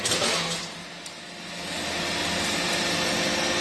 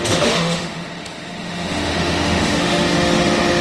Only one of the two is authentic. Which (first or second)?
first